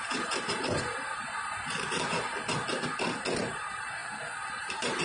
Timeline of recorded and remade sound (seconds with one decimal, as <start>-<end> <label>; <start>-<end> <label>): 0.0-2.3 remade; 2.3-3.4 recorded; 3.4-4.0 remade; 4.0-4.6 recorded; 4.6-5.0 remade